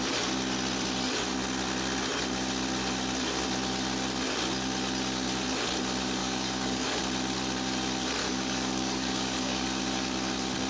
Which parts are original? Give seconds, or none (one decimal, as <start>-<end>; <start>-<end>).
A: 0.0-6.2; 7.0-8.2; 9.8-10.7